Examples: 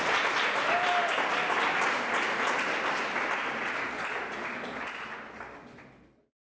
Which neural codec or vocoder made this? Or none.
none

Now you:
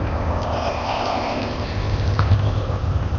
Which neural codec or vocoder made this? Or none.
codec, ZipCodec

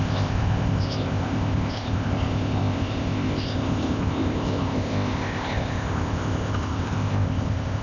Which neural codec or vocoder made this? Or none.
codec, ZipCodec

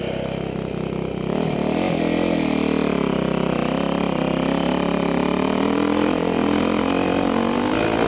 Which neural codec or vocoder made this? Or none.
none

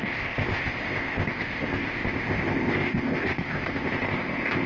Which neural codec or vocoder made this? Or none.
codec, ZipCodec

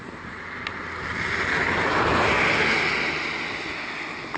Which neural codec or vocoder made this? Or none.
none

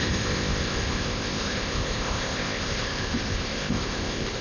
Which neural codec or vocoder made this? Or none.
codec, ZipCodec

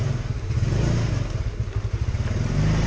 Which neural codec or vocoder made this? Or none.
none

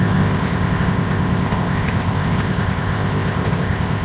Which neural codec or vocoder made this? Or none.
codec, ZipCodec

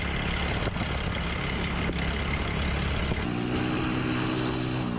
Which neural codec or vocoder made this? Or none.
none